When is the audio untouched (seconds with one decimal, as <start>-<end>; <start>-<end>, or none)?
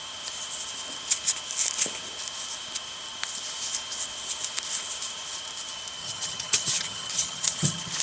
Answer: 0.0-6.0